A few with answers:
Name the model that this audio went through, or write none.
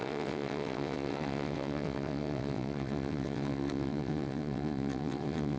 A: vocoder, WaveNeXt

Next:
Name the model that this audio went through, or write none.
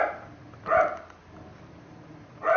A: none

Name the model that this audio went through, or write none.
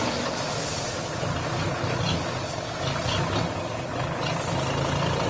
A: none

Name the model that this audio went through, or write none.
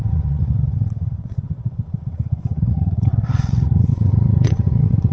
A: vocoder, WaveNeXt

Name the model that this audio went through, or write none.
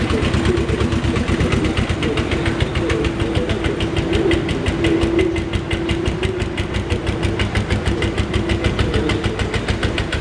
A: none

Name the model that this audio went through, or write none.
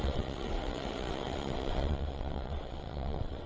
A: vocoder, WaveNeXt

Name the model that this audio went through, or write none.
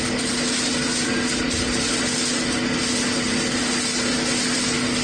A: none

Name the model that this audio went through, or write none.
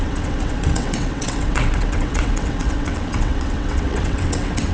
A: vocoder, WaveNeXt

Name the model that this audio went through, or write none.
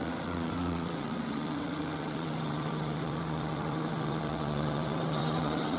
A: vocoder, WaveNeXt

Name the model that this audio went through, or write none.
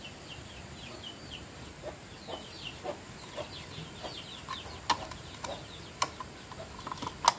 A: none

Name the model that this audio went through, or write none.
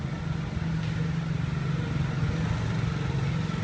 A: none